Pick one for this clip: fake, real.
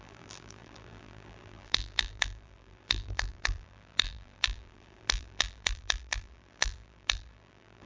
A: fake